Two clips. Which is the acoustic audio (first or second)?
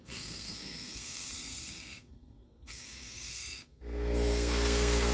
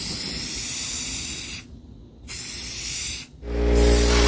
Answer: second